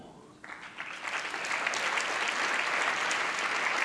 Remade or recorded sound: recorded